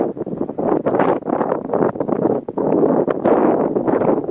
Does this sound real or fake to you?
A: real